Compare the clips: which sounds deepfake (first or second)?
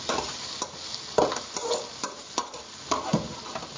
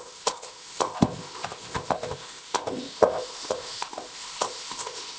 second